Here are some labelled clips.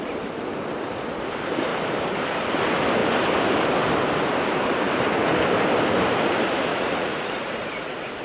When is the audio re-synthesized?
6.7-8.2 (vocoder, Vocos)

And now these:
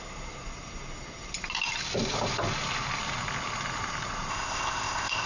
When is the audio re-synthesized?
4.3-5.3 (codec, ZipCodec)

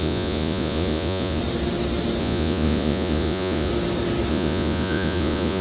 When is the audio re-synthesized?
0.0-1.4 (vocoder, Vocos); 2.2-3.7; 4.3-5.6